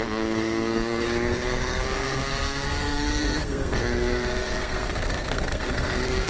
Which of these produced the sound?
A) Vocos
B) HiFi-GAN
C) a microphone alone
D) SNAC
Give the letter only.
D